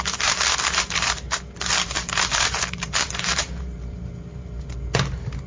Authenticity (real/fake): fake